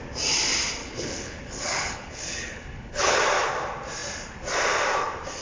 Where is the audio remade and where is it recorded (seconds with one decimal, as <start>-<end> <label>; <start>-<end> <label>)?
0.0-0.8 recorded; 0.8-3.2 remade; 3.2-5.4 recorded